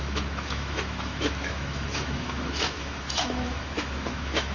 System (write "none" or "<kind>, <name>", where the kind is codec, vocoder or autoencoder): autoencoder, DAC-VAE